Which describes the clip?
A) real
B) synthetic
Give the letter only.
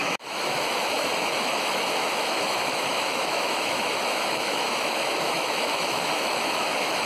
B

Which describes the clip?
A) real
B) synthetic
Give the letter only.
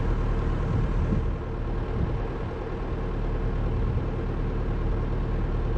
A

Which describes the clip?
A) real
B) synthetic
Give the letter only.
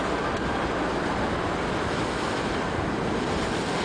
A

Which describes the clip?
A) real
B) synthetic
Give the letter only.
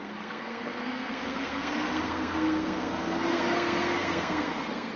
B